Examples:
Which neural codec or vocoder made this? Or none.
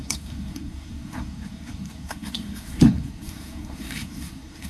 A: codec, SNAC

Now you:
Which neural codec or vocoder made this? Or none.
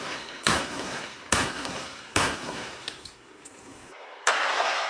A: codec, SNAC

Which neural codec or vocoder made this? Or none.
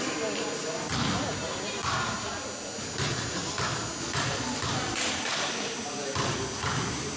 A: none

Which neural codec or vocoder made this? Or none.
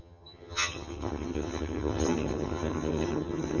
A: vocoder, HiFi-GAN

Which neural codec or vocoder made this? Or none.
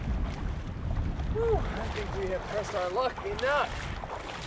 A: none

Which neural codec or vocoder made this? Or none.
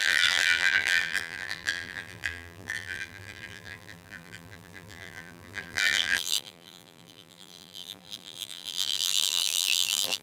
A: vocoder, BigVGAN v2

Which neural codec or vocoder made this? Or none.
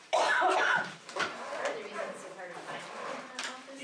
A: vocoder, BigVGAN v2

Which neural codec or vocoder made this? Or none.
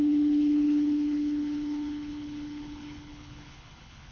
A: codec, HILCodec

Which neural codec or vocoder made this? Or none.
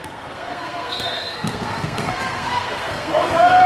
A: codec, SNAC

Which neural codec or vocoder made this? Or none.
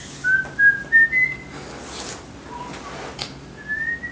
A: none